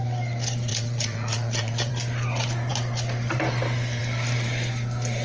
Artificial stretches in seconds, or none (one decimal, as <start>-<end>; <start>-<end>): 0.7-1.9